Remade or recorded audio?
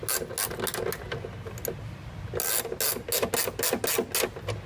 recorded